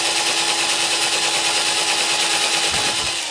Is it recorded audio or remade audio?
recorded